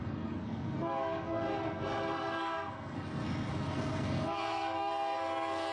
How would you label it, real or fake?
fake